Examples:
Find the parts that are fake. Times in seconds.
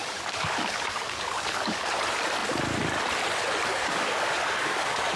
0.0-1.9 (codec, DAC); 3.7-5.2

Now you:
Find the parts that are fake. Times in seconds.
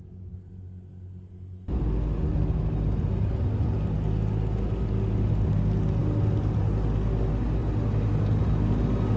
none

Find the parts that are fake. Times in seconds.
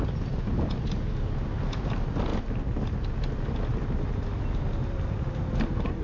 none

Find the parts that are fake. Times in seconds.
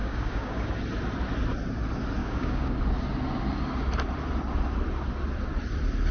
0.0-0.7 (codec, DAC); 2.2-2.8